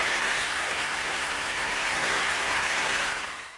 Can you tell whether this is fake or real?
fake